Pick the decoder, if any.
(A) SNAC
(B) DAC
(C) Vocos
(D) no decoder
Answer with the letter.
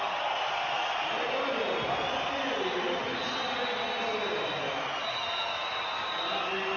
D